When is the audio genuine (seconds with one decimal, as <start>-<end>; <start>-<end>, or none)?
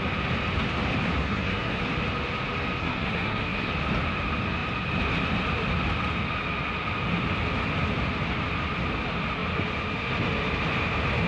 0.0-1.2; 1.8-2.8; 3.7-11.3